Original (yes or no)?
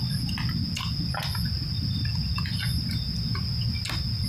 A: yes